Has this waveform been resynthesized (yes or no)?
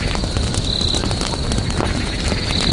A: no